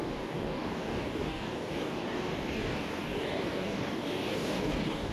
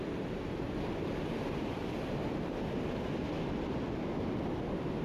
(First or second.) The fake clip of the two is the first